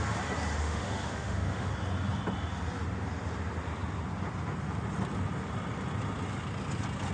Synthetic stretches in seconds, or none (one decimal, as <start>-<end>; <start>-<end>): 0.6-1.7